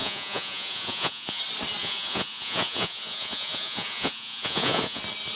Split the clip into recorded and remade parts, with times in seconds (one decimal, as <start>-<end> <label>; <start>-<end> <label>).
0.0-1.4 remade; 1.4-1.8 recorded; 1.8-5.0 remade; 5.0-5.4 recorded